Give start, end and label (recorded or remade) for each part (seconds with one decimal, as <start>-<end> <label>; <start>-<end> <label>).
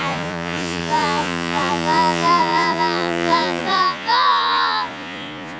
0.0-5.6 remade